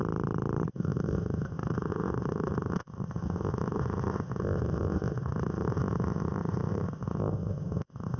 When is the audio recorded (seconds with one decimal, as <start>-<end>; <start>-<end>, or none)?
0.0-0.7